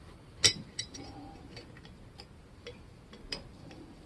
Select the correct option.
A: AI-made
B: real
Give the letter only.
B